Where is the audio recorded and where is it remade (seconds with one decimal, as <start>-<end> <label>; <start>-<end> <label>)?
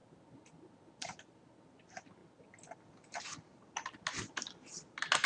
0.0-5.3 recorded